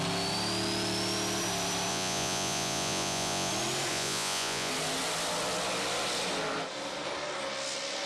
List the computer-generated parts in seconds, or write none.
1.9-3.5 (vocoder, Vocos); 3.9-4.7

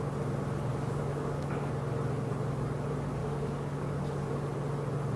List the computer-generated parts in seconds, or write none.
0.7-1.7 (codec, DAC); 3.2-4.3

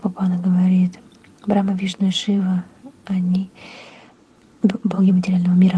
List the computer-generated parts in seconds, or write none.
1.9-2.4 (vocoder, Vocos); 3.7-5.1

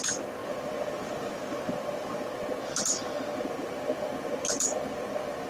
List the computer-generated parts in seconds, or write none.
none

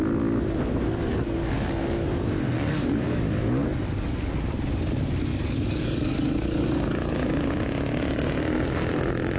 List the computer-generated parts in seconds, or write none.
1.0-4.3 (codec, DAC); 5.3-7.3

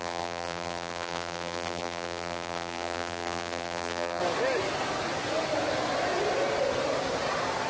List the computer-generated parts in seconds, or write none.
0.0-4.2 (vocoder, BigVGAN v2)